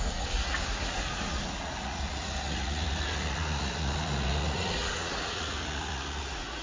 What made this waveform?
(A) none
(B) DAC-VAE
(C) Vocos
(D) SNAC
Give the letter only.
C